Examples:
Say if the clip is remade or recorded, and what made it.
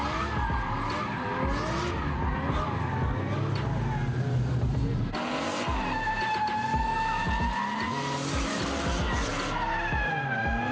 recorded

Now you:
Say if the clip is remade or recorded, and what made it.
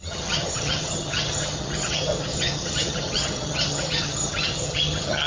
remade, vocoder, HiFi-GAN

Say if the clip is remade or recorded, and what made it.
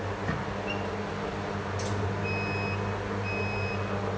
recorded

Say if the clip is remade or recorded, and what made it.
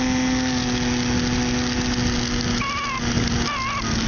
recorded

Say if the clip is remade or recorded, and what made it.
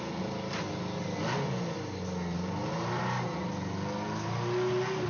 recorded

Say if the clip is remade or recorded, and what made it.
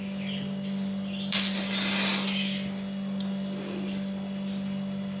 recorded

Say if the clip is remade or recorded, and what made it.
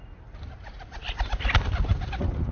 recorded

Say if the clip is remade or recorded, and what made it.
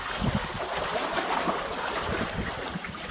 recorded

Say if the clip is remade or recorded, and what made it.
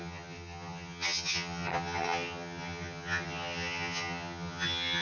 remade, vocoder, HiFi-GAN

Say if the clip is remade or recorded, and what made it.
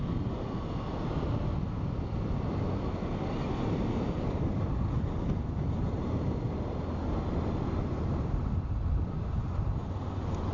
recorded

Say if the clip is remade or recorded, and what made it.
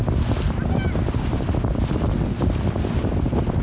recorded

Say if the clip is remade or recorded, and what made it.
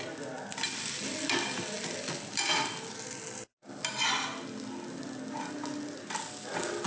recorded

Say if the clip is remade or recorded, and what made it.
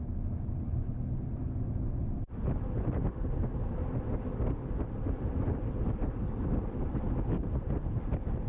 recorded